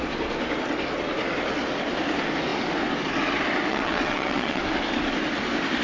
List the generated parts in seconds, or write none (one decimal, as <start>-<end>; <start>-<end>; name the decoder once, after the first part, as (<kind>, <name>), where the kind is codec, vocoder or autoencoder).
3.7-4.6 (vocoder, WaveNeXt)